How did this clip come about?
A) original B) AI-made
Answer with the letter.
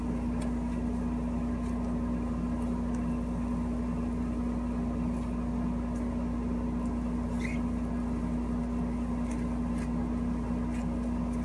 A